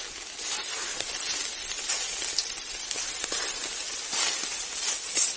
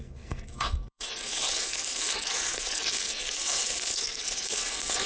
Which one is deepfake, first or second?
second